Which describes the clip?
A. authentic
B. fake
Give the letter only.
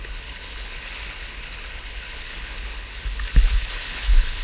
B